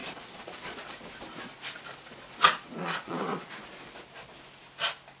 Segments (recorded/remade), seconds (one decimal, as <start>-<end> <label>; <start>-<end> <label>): 0.0-0.9 remade; 0.9-2.8 recorded; 2.8-3.5 remade; 3.5-5.2 recorded